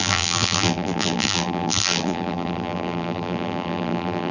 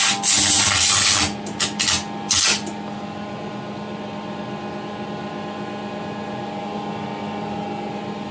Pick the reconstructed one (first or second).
first